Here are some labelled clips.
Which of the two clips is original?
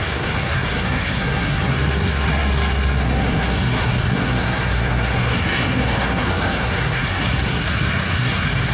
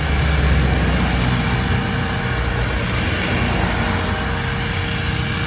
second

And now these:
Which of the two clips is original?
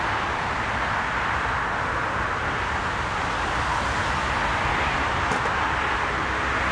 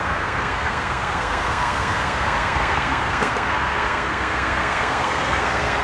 first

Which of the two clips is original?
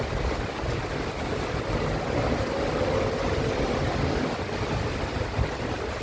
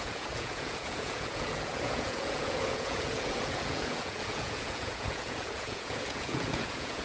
first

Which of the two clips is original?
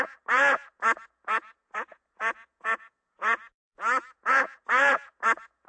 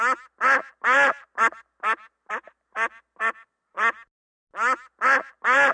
second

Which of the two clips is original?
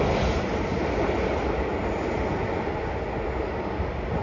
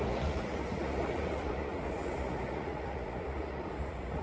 first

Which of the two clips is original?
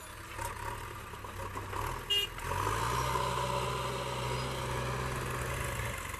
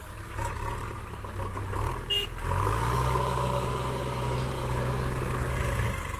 first